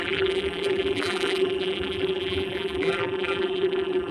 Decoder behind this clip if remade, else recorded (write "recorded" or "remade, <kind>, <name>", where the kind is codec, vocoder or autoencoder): remade, vocoder, BigVGAN v2